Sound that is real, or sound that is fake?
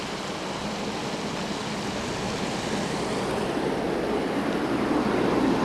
real